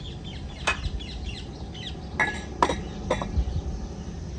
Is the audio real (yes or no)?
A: yes